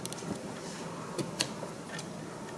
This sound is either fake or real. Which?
real